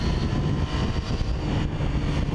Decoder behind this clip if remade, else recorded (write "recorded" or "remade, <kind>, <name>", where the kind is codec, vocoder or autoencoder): recorded